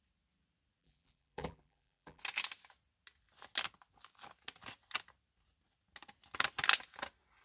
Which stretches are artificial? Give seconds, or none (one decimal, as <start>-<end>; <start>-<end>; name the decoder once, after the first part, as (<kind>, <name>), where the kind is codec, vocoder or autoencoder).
0.8-2.2 (vocoder, BigVGAN v2)